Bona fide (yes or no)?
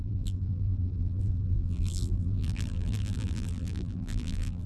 no